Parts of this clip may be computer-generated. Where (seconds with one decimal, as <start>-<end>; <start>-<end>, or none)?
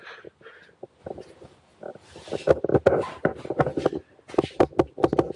none